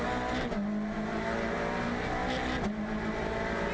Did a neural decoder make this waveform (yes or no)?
no